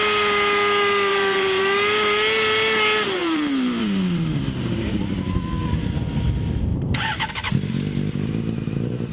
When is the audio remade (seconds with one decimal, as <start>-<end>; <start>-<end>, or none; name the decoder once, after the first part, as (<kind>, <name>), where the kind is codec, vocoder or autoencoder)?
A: 1.1-1.6 (vocoder, BigVGAN v2); 3.2-4.4; 6.7-7.3